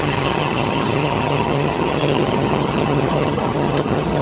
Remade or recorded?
remade